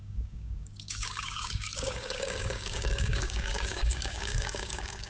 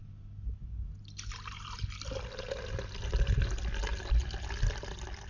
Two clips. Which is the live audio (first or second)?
second